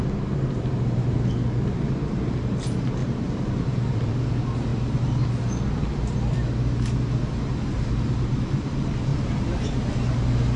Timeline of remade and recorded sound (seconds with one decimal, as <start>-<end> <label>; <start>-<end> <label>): 0.0-3.0 recorded; 3.0-4.1 remade; 4.1-9.1 recorded; 9.1-9.9 remade; 9.9-10.6 recorded